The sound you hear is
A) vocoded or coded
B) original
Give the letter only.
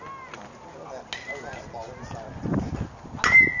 B